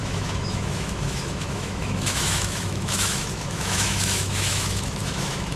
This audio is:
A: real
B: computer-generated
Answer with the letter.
B